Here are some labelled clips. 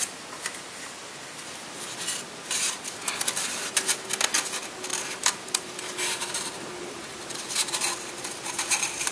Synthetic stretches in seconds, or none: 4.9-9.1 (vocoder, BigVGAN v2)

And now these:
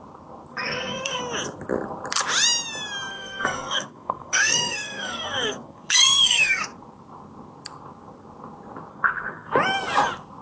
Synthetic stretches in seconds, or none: 0.5-1.2 (codec, SNAC); 3.1-6.6; 8.9-9.5